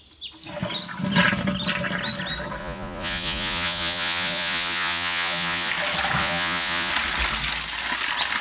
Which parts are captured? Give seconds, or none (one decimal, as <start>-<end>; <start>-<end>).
0.0-2.6; 5.7-6.2; 6.9-8.4